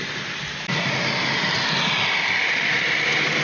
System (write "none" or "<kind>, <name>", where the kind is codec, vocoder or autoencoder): none